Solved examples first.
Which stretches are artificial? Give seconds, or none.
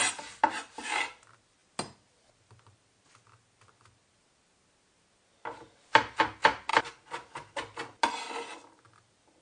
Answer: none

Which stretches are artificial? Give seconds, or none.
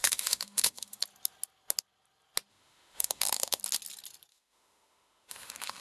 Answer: 0.0-1.0 (autoencoder, DAC-VAE); 2.5-3.6; 4.3-5.8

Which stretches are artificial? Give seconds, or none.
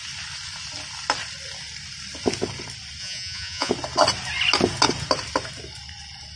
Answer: 3.0-3.7 (vocoder, Vocos)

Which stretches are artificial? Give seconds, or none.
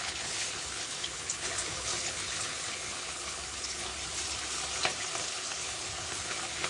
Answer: 0.0-3.9 (codec, HILCodec); 5.2-6.7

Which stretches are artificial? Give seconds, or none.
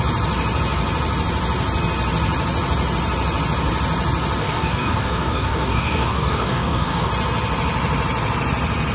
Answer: 4.4-7.1 (codec, DAC)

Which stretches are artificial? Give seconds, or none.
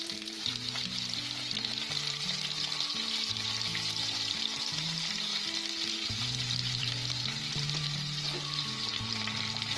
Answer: 0.0-5.3 (vocoder, BigVGAN v2); 5.9-9.8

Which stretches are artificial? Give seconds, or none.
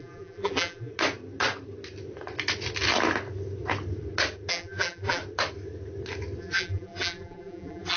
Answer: 0.0-0.9 (vocoder, BigVGAN v2); 4.5-5.2; 6.4-8.0